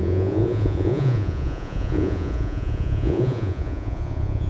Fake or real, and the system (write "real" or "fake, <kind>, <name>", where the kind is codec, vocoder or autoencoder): fake, vocoder, Vocos